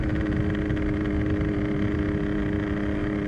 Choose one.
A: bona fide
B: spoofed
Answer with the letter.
A